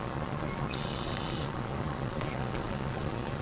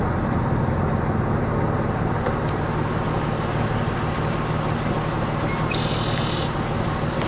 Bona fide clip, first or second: second